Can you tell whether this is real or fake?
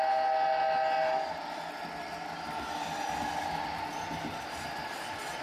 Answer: real